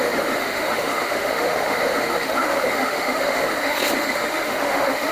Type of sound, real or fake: fake